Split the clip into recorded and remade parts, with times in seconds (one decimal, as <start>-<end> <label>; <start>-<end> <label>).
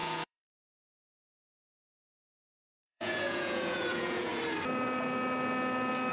0.0-4.3 remade; 4.3-6.1 recorded